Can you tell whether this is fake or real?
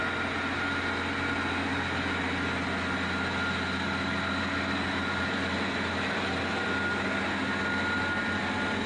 real